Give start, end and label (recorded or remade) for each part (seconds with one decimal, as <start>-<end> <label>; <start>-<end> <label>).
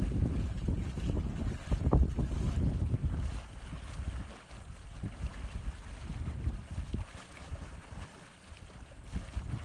0.0-9.6 recorded